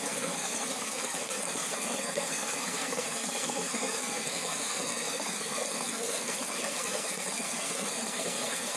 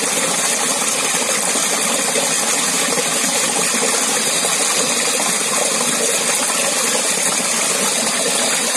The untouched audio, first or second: second